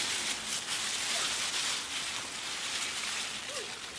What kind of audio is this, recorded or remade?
recorded